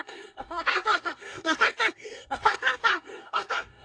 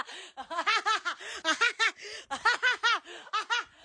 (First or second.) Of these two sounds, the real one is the second